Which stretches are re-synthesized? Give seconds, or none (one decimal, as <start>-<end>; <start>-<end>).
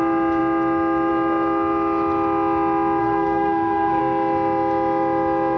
3.0-4.0